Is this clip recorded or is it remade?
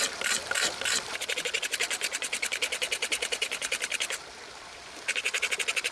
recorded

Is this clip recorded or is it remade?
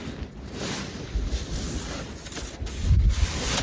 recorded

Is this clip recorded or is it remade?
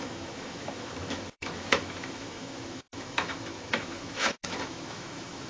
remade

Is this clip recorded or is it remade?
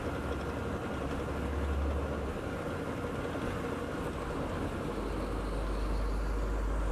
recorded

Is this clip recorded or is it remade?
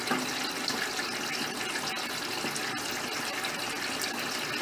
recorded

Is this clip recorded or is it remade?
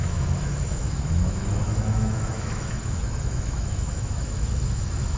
remade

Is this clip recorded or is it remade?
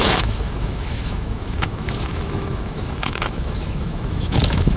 remade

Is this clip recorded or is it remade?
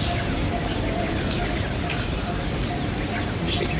recorded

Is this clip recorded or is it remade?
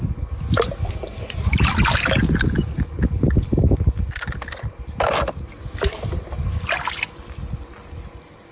recorded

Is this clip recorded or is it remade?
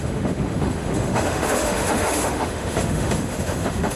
remade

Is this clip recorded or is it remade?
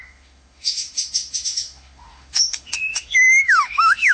remade